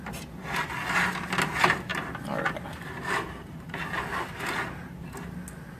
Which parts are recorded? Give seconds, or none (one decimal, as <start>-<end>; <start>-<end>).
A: 0.0-5.8